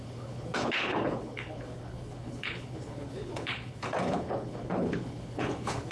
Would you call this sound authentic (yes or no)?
no